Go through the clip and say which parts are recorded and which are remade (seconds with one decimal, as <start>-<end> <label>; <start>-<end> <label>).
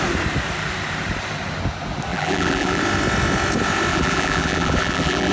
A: 0.0-2.1 recorded; 2.1-2.8 remade; 2.8-3.9 recorded; 3.9-5.3 remade